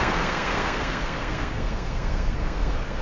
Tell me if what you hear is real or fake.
fake